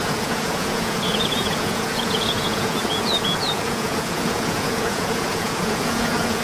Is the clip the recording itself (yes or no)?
no